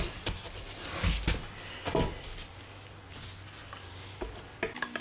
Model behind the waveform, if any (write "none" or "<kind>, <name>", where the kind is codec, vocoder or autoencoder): none